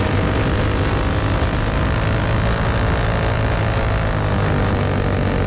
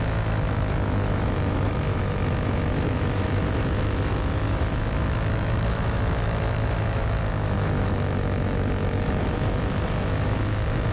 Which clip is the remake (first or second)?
second